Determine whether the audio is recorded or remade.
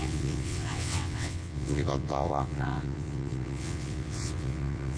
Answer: remade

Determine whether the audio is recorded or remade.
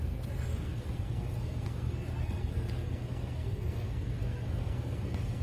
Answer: remade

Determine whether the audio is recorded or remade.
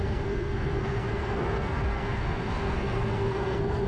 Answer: remade